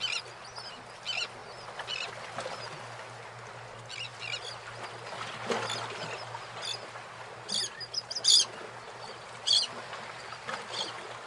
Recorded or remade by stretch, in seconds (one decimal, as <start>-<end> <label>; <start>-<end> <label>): 0.0-11.3 recorded